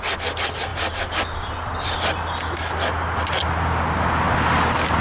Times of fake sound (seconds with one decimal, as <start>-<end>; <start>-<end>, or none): none